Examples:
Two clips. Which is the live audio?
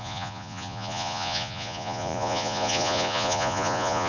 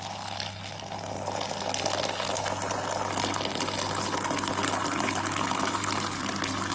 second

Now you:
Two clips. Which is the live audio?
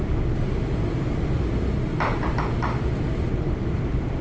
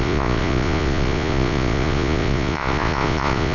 first